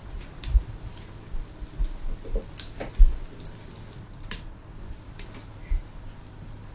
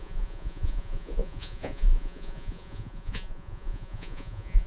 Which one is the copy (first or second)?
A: second